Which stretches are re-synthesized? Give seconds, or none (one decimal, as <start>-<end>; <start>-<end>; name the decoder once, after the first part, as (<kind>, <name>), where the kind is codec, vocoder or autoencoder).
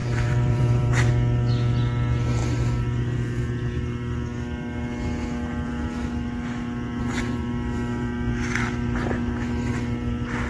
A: 0.0-1.1 (vocoder, BigVGAN v2)